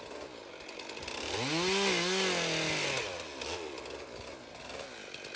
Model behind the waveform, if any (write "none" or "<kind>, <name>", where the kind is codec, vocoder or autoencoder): none